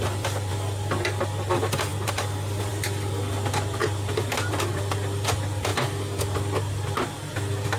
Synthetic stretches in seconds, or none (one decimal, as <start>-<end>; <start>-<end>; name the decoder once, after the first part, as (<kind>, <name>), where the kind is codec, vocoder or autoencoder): 0.0-0.5 (vocoder, BigVGAN v2); 1.2-5.7; 7.1-7.8